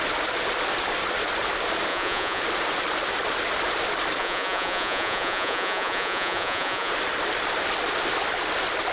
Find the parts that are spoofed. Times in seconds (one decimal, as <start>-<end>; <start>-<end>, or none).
1.9-2.4; 4.2-6.9